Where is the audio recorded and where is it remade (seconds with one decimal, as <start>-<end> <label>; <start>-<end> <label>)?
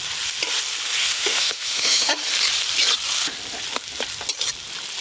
0.0-1.0 recorded; 1.0-2.1 remade; 2.1-5.0 recorded